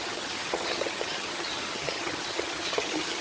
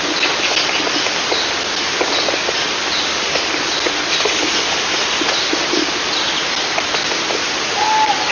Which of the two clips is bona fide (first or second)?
second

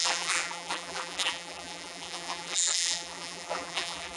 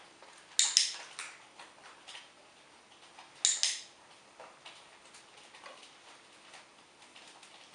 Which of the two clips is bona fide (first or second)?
second